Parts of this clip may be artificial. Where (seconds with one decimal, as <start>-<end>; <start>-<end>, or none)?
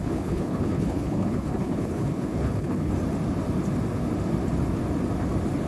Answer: 0.0-2.9